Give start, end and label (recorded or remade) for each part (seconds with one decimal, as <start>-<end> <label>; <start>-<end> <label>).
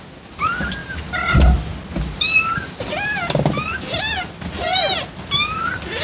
0.0-6.0 recorded